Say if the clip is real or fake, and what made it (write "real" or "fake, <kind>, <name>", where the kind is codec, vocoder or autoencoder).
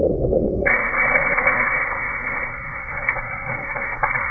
fake, codec, SNAC